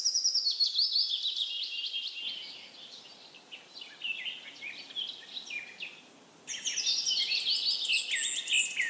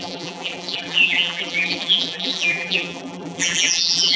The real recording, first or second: first